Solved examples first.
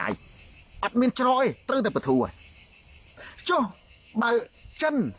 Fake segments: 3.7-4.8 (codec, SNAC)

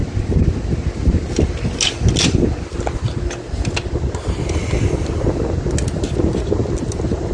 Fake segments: none

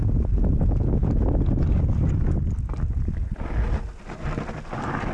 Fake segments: none

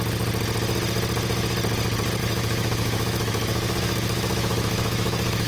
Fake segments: 2.2-5.5 (autoencoder, DAC-VAE)

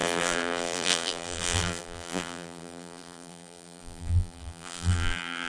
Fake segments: 0.0-5.5 (vocoder, BigVGAN v2)

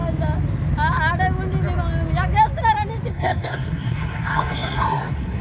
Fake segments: 3.1-5.4 (codec, SNAC)

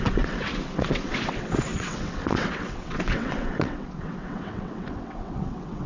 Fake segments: 0.0-5.9 (vocoder, WaveNeXt)

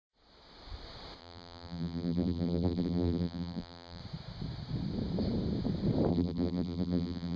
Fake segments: 1.2-4.0 (vocoder, BigVGAN v2); 6.1-7.4